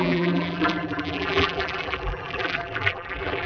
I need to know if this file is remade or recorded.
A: remade